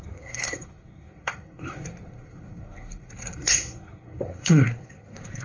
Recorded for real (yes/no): no